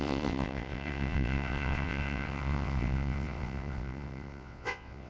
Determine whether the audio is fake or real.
fake